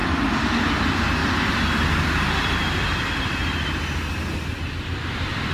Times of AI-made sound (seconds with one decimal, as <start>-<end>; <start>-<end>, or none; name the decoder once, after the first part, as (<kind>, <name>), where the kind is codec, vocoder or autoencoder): 0.0-0.6 (vocoder, BigVGAN v2); 1.2-3.0; 4.3-4.9